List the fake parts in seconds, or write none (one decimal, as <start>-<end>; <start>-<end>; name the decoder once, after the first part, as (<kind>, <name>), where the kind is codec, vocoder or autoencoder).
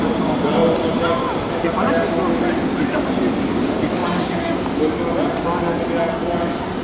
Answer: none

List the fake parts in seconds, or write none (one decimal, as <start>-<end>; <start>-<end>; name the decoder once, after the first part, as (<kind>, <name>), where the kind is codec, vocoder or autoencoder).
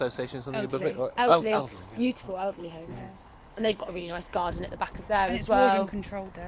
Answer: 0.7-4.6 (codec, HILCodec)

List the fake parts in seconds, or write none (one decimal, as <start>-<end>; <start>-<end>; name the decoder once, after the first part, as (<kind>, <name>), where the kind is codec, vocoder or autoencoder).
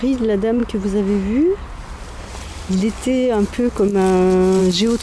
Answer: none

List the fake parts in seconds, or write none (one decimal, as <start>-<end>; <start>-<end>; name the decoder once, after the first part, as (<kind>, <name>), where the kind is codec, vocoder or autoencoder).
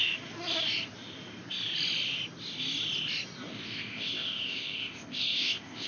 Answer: 3.5-5.9 (codec, ZipCodec)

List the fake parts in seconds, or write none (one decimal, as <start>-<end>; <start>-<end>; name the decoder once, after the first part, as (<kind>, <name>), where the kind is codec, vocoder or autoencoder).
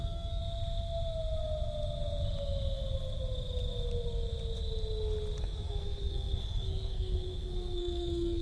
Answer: 0.0-0.4 (codec, SNAC); 5.4-8.4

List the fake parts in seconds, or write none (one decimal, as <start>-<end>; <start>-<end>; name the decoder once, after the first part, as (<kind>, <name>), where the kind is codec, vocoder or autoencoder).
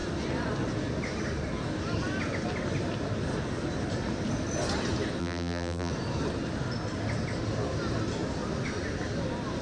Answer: 5.2-5.9 (vocoder, BigVGAN v2)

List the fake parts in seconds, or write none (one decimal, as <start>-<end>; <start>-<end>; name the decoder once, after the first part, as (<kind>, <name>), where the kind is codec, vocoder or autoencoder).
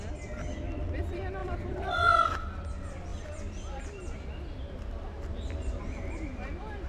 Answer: 1.4-2.2 (vocoder, BigVGAN v2); 6.3-6.9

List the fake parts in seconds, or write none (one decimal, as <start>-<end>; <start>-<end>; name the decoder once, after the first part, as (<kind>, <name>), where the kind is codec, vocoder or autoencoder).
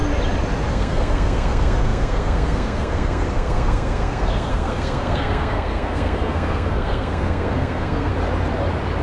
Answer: 0.7-8.1 (codec, SNAC)